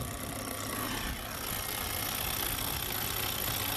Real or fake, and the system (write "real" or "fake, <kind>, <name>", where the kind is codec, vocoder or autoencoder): real